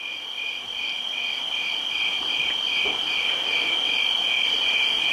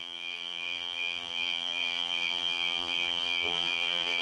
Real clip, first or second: first